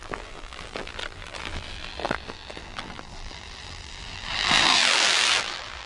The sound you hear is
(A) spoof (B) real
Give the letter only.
A